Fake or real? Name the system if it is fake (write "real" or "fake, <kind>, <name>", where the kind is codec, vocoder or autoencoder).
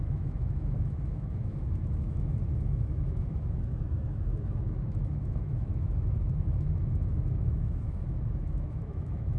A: fake, autoencoder, DAC-VAE